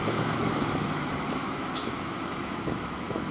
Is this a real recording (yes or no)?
no